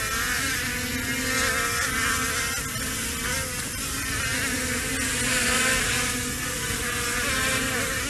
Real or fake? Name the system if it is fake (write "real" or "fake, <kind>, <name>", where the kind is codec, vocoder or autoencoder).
real